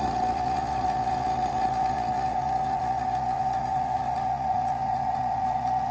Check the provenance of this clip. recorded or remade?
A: remade